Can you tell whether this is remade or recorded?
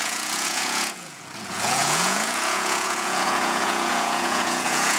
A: remade